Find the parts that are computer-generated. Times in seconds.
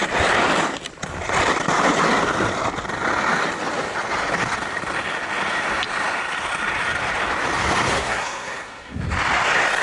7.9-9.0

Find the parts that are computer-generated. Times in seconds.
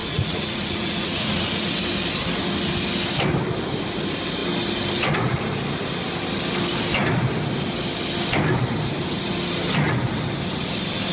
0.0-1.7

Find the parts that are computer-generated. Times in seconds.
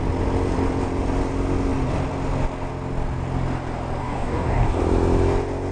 4.0-4.8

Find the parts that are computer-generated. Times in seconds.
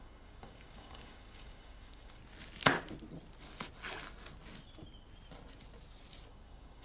0.0-2.2; 6.3-6.8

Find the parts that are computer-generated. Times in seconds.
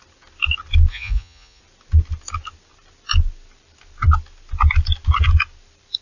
0.9-1.6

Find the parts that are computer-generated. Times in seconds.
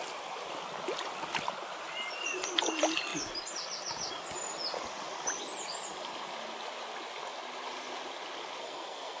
8.6-9.2